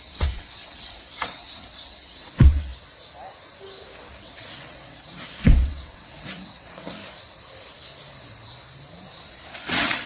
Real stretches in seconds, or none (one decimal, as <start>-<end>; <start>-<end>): 2.7-4.0; 7.0-9.5